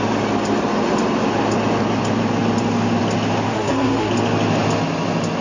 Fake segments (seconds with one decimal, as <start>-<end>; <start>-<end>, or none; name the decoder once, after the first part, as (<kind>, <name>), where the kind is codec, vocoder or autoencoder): 3.5-4.1 (codec, SNAC)